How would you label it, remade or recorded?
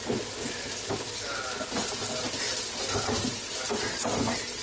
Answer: recorded